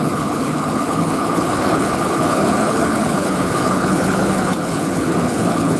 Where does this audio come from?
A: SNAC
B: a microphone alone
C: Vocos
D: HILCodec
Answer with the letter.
D